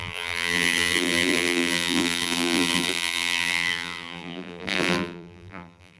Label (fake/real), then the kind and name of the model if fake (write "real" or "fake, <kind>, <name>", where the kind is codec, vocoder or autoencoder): fake, vocoder, BigVGAN v2